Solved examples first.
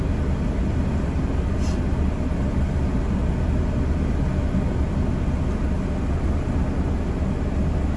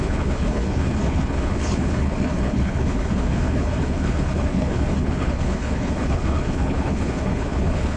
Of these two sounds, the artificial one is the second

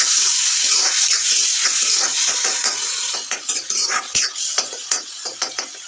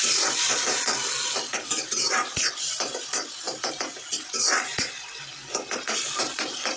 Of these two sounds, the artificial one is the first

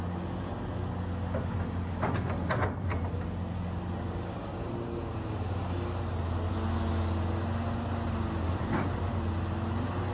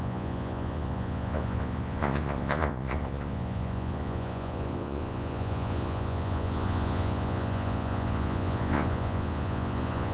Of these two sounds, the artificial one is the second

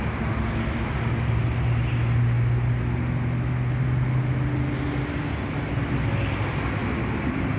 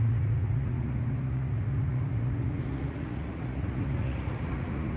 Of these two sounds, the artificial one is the second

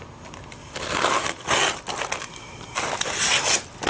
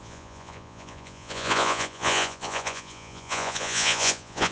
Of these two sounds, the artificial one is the second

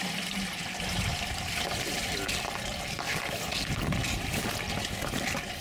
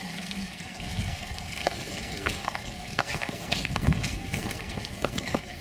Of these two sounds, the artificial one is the second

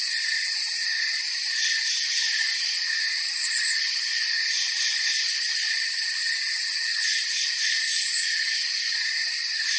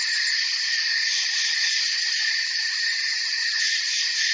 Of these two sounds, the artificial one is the second